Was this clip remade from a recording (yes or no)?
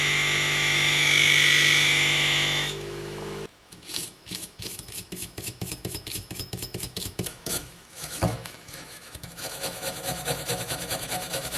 yes